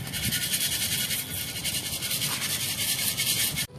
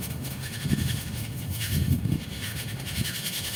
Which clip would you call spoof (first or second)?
second